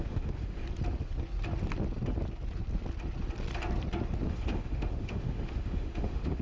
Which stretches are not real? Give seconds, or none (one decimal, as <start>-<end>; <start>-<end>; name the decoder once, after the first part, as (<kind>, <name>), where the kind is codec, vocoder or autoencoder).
0.0-0.6 (autoencoder, DAC-VAE); 4.3-6.4